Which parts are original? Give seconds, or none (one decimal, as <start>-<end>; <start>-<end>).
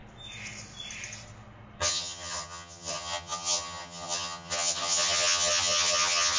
0.0-1.8